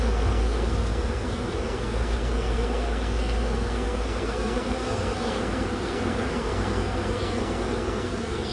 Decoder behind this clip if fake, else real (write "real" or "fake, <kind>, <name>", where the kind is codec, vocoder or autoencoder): fake, codec, SNAC